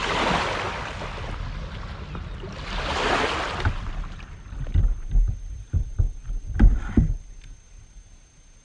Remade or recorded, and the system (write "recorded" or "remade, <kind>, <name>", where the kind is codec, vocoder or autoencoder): recorded